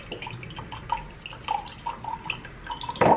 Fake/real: real